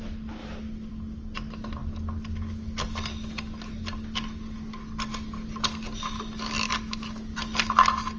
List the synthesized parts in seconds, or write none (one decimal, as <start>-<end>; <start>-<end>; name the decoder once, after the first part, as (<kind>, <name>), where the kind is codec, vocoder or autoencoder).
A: none